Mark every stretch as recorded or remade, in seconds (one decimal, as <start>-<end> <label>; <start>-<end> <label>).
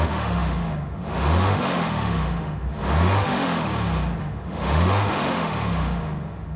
0.0-3.7 remade; 3.7-4.2 recorded; 4.2-6.6 remade